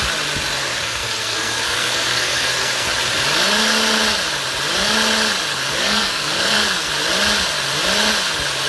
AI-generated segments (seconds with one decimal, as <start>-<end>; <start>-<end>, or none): 0.6-2.9; 5.5-6.9